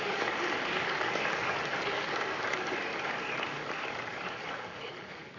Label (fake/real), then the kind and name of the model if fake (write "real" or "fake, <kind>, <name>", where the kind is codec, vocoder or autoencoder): fake, codec, DAC